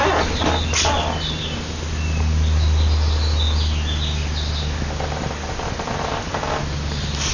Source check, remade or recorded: recorded